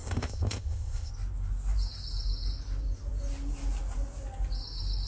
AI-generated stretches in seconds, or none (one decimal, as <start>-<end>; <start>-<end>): 0.0-1.1